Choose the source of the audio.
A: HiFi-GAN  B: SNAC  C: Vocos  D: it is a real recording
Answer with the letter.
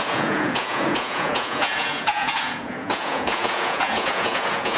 C